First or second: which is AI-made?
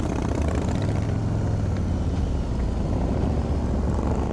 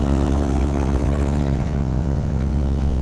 second